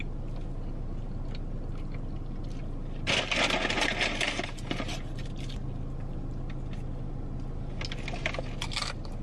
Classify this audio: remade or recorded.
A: recorded